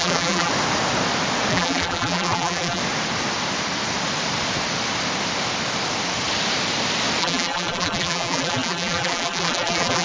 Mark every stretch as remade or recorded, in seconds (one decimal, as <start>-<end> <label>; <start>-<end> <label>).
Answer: 0.0-0.5 remade; 0.5-1.5 recorded; 1.5-2.8 remade; 2.8-7.2 recorded; 7.2-10.0 remade